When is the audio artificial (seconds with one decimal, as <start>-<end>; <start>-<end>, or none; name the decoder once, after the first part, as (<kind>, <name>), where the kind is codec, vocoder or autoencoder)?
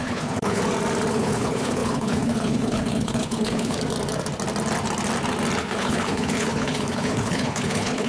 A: 0.0-0.6 (codec, HILCodec); 1.1-3.8; 5.6-8.1